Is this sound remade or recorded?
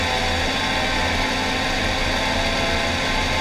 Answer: recorded